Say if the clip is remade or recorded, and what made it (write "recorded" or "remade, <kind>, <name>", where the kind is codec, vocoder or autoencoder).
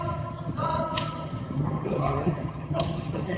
remade, vocoder, HiFi-GAN